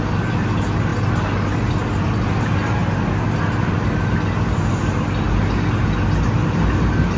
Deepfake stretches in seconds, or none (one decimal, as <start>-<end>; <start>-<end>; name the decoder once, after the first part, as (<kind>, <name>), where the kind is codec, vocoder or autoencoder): none